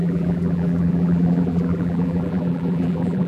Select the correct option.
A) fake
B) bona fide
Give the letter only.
A